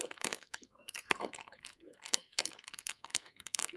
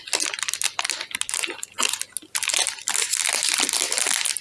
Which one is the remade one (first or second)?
first